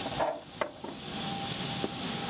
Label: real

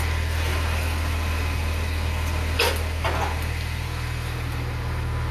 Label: real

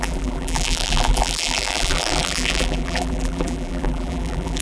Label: fake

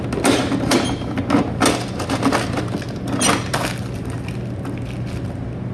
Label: real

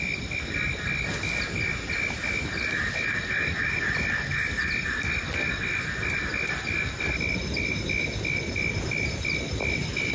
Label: real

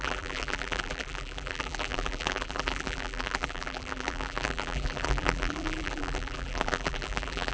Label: fake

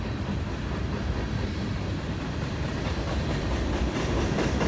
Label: fake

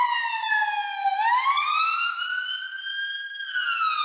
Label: real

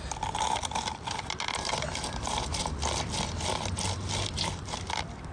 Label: fake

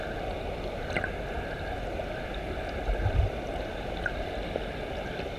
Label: real